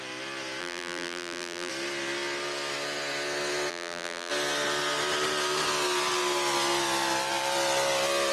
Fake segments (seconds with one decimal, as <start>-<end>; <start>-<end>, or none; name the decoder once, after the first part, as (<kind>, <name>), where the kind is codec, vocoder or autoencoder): 0.6-1.7 (vocoder, BigVGAN v2); 3.7-4.3